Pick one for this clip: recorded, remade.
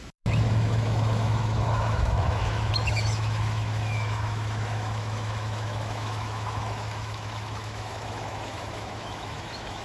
remade